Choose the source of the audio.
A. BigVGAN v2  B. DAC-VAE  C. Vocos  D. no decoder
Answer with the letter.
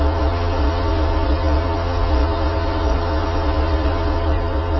C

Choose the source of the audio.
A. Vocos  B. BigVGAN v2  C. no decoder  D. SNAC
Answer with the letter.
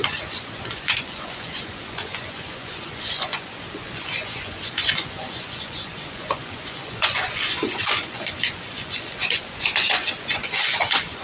A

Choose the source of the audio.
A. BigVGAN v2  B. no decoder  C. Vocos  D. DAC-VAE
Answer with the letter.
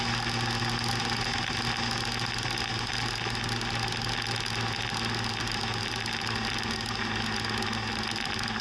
B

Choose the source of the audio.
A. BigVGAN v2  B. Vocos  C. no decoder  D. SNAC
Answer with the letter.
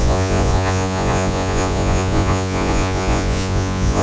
B